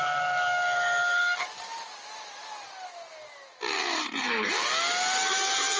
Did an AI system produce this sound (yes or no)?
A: no